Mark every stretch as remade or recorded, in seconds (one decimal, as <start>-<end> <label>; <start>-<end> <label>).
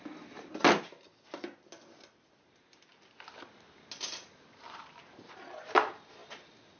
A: 0.0-6.8 recorded